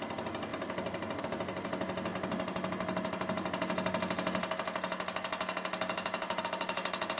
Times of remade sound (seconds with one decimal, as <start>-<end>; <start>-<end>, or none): none